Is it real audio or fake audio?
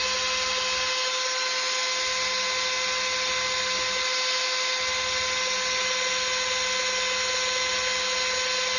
real